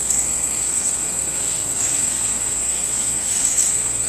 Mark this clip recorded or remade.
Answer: remade